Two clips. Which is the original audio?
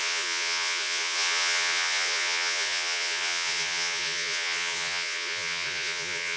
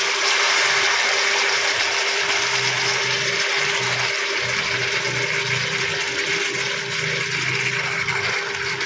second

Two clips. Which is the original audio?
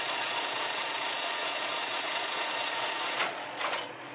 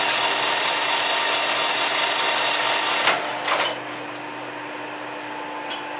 second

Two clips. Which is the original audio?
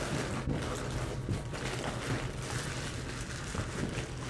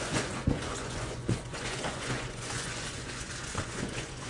first